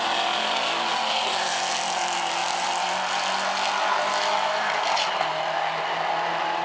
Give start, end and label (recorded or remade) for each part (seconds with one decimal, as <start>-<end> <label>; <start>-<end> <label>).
0.0-6.6 recorded